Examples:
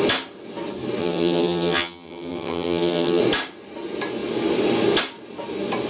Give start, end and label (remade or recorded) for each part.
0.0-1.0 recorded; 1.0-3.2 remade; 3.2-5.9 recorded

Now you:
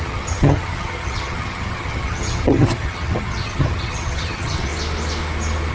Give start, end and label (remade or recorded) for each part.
0.0-4.7 remade; 4.7-5.7 recorded